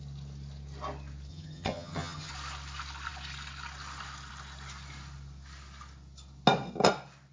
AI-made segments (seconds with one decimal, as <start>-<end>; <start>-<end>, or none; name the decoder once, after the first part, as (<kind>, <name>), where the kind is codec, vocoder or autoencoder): 1.3-2.3 (vocoder, HiFi-GAN)